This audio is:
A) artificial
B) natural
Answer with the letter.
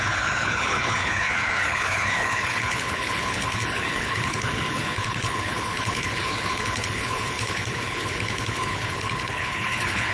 A